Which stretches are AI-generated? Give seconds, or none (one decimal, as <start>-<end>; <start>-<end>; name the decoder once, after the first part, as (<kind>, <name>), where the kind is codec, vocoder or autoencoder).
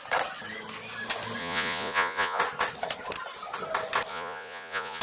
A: 1.4-2.4 (vocoder, Vocos); 4.1-5.0